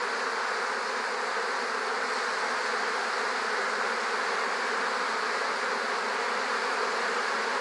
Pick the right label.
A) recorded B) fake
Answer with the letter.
A